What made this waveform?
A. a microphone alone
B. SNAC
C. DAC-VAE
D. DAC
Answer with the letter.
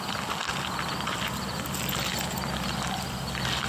A